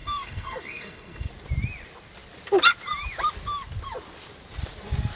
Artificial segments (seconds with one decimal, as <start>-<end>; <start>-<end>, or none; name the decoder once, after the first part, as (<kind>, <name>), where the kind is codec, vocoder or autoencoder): 0.0-1.3 (codec, SNAC)